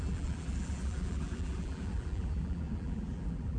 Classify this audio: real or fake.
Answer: fake